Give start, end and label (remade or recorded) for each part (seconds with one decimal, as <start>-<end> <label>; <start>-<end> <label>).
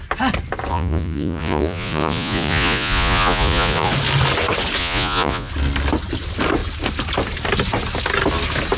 0.0-0.7 recorded; 0.7-3.9 remade; 3.9-4.8 recorded; 4.8-5.5 remade; 5.5-8.8 recorded